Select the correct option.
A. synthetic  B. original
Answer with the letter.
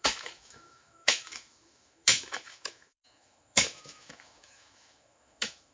A